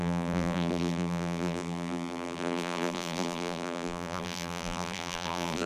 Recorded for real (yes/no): no